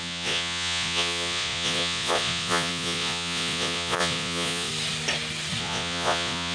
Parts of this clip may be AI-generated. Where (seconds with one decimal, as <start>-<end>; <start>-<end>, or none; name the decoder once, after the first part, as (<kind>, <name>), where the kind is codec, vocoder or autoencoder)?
0.0-4.7 (vocoder, Vocos); 5.6-6.5